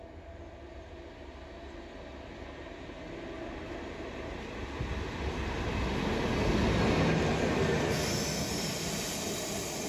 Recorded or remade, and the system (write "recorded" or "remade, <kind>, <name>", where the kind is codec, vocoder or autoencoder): recorded